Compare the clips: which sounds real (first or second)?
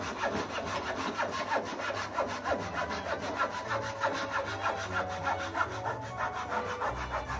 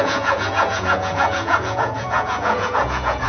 first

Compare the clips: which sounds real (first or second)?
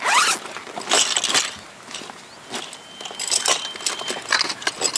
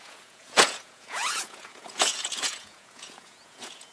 first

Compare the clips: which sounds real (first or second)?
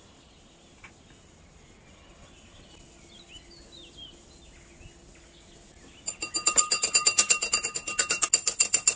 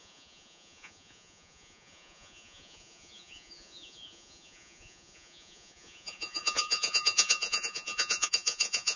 first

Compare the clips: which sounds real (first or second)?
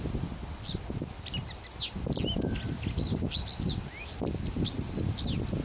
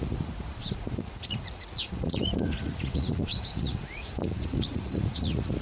first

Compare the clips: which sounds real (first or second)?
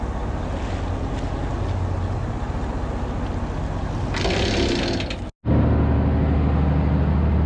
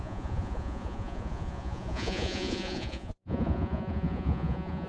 first